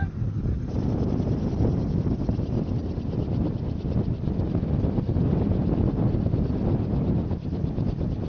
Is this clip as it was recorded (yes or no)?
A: yes